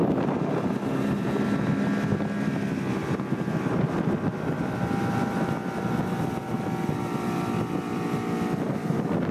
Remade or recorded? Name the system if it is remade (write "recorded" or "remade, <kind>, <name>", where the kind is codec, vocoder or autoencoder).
recorded